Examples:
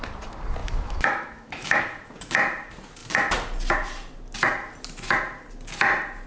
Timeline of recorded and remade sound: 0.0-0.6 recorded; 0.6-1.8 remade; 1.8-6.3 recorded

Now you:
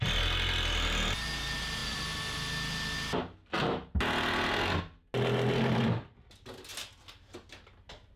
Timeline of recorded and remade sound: 0.0-8.2 recorded

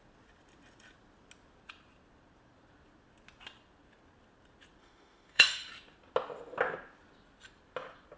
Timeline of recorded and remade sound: 0.0-4.8 recorded; 4.8-5.7 remade; 5.7-8.2 recorded

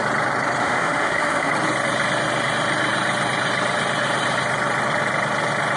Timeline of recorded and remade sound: 0.0-0.6 recorded; 0.6-1.5 remade; 1.5-5.8 recorded

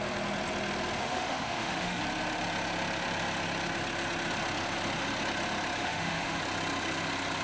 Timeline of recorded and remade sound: 0.0-1.0 recorded; 1.0-2.0 remade; 2.0-5.8 recorded; 5.8-6.4 remade; 6.4-7.4 recorded